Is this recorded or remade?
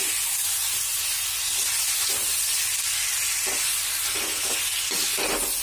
recorded